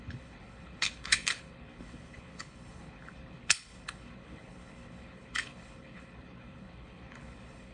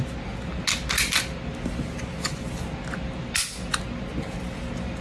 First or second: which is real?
second